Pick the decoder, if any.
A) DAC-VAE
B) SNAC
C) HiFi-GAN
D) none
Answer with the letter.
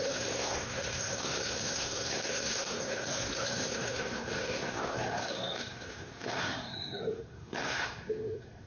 B